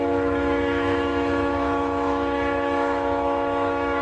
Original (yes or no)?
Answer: no